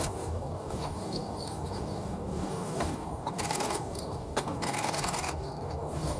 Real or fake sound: fake